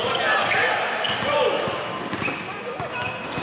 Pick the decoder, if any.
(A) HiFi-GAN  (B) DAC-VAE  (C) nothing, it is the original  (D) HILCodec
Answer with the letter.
C